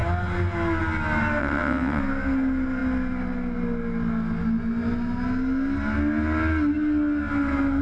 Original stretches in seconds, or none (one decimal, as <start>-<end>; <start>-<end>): 0.0-1.4; 2.0-7.8